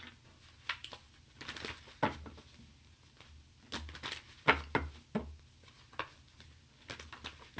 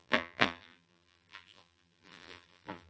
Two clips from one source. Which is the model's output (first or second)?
second